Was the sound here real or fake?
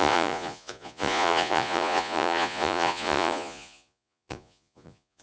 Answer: fake